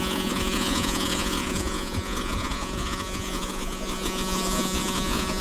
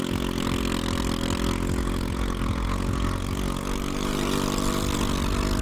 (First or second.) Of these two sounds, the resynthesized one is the first